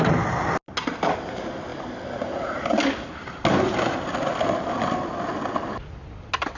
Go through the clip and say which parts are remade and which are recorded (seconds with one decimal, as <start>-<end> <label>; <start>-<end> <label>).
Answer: 0.0-6.6 recorded